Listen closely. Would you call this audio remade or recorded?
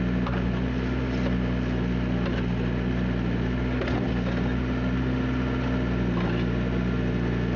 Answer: recorded